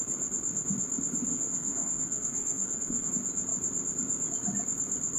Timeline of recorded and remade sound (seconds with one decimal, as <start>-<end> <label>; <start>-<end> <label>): 0.0-1.3 recorded; 1.3-3.1 remade; 3.1-5.2 recorded